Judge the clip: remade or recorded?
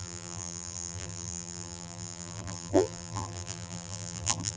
remade